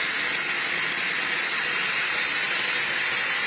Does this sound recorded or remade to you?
recorded